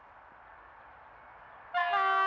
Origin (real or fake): real